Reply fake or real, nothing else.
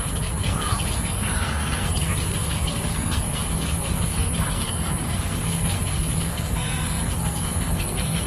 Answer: fake